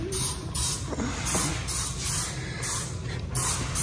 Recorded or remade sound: recorded